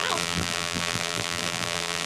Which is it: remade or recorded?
remade